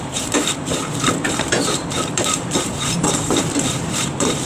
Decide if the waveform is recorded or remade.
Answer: remade